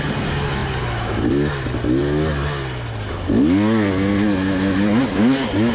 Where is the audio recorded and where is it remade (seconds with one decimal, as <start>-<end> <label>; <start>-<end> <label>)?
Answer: 0.0-0.6 recorded; 0.6-1.1 remade; 1.1-5.7 recorded